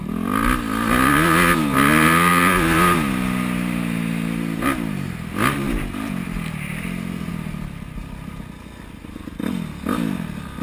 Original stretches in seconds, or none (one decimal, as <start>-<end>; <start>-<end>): 0.0-10.6

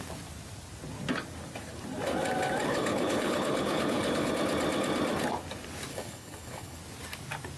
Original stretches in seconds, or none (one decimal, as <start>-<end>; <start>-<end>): 0.0-2.7; 4.3-5.9; 6.8-7.6

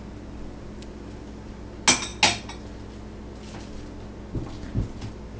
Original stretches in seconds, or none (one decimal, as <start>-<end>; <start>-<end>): 0.0-5.4

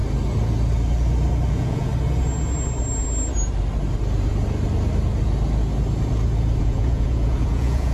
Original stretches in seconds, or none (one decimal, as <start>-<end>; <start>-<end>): 0.0-1.5; 1.9-6.6